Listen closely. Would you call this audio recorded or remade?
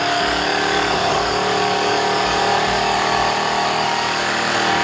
remade